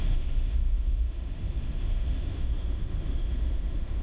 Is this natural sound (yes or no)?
no